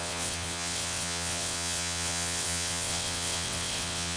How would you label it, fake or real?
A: fake